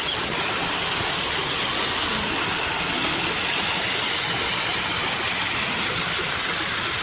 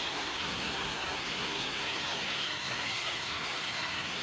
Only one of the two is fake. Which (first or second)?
second